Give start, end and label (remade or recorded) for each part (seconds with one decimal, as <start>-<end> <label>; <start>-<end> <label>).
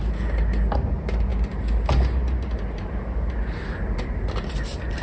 0.0-5.0 recorded